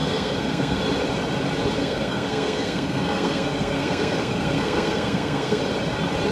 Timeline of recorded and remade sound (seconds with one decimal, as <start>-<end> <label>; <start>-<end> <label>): 0.0-0.8 remade; 0.8-1.8 recorded; 1.8-5.6 remade; 5.6-6.3 recorded